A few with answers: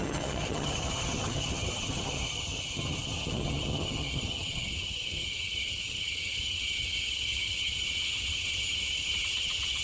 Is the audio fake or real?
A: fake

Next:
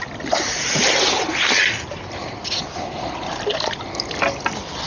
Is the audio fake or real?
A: real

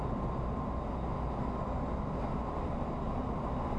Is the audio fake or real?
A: real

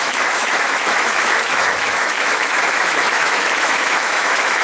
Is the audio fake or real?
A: fake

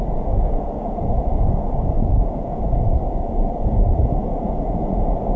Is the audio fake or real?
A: fake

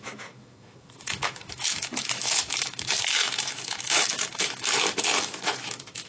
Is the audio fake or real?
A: fake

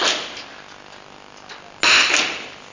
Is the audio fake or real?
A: real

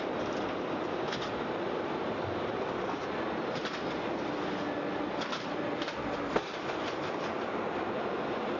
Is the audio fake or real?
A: real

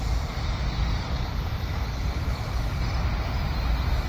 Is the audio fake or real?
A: real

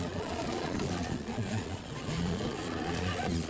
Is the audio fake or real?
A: fake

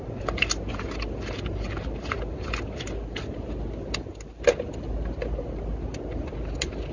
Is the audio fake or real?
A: real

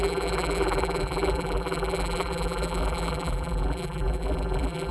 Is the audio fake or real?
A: fake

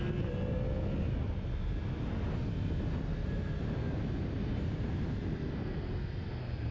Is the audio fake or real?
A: real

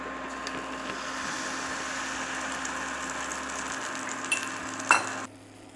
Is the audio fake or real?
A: real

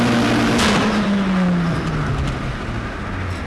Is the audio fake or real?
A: real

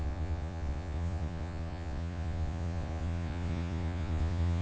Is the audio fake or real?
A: fake